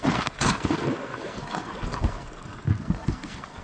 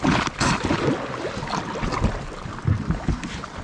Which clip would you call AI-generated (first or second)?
first